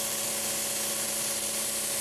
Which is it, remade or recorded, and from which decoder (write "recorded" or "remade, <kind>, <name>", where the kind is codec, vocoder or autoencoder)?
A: recorded